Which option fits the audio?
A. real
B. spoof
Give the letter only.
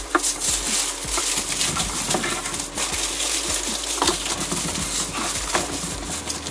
A